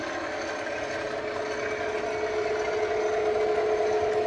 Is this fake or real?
real